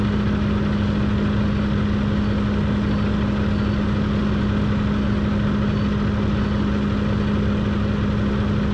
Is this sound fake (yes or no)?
no